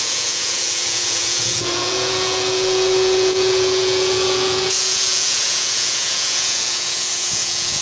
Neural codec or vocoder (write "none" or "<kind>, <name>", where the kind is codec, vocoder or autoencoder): vocoder, Vocos